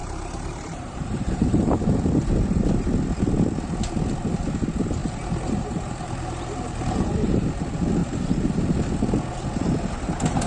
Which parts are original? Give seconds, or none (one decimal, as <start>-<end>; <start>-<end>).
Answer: 1.9-5.0; 7.1-8.0; 8.6-10.5